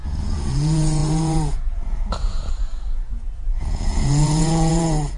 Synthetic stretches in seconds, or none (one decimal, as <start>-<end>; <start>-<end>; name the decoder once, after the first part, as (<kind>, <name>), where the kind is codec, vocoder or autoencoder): 0.0-5.2 (vocoder, Vocos)